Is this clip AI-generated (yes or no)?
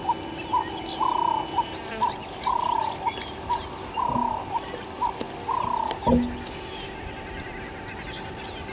no